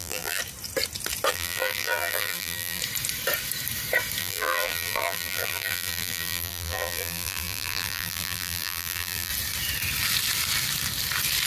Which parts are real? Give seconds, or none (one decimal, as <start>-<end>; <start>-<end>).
0.4-1.3; 2.8-4.2; 9.3-11.5